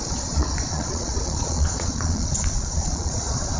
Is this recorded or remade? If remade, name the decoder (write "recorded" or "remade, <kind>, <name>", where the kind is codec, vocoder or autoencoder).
remade, vocoder, Vocos